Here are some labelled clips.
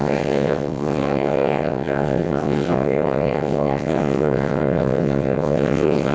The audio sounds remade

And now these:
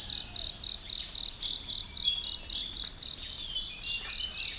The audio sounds recorded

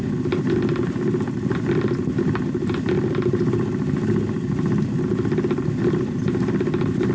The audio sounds recorded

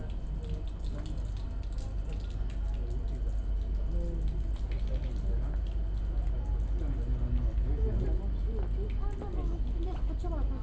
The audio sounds recorded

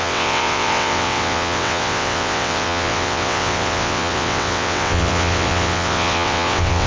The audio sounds remade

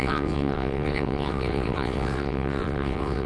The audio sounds remade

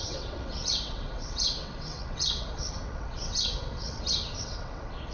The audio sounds remade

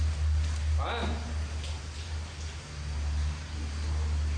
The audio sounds recorded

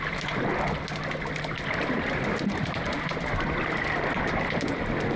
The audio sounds recorded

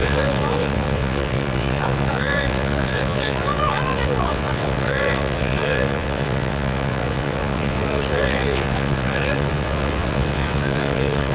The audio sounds remade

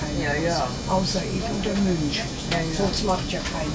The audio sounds recorded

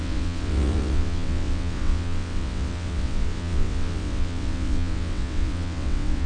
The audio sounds remade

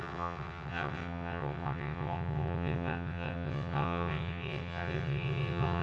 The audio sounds remade